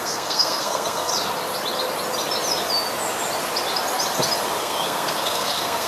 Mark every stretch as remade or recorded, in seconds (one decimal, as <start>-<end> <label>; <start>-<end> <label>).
0.0-1.1 remade; 1.1-4.6 recorded; 4.6-5.9 remade

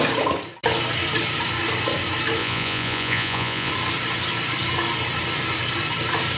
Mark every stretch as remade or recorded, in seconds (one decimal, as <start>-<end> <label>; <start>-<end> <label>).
0.0-2.4 recorded; 2.4-3.7 remade; 3.7-6.4 recorded

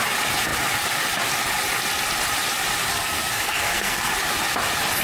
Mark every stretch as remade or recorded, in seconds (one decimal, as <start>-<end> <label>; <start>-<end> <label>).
0.0-2.9 recorded; 2.9-4.1 remade; 4.1-5.0 recorded

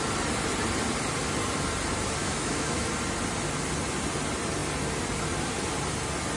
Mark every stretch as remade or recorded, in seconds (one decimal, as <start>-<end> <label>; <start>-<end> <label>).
0.0-2.2 recorded; 2.2-2.9 remade; 2.9-6.4 recorded

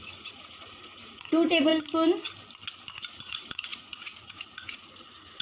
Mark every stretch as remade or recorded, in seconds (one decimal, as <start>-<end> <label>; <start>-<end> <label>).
0.0-1.7 remade; 1.7-3.1 recorded; 3.1-5.4 remade

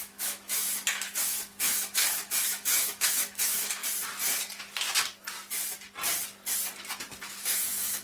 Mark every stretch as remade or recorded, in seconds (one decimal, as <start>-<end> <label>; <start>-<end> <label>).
0.0-3.8 remade; 3.8-7.2 recorded; 7.2-8.0 remade

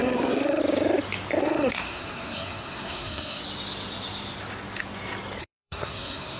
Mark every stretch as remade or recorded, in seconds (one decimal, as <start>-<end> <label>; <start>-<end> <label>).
0.0-0.6 remade; 0.6-1.4 recorded; 1.4-3.4 remade; 3.4-5.4 recorded; 5.4-6.4 remade